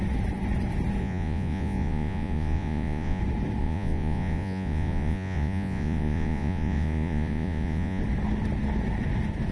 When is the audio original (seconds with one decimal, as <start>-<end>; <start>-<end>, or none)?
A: 0.0-1.0; 3.2-3.6; 8.0-9.5